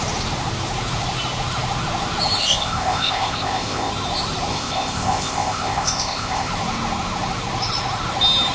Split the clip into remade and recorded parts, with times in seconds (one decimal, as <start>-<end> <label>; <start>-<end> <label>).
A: 0.0-2.4 recorded; 2.4-3.9 remade; 3.9-4.5 recorded; 4.5-6.5 remade; 6.5-8.5 recorded